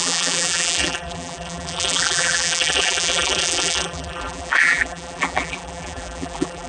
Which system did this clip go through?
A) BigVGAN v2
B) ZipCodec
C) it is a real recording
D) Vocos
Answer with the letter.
A